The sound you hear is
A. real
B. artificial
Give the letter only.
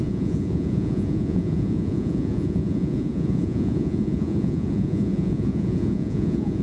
B